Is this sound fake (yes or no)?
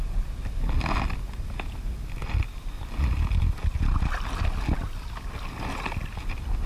no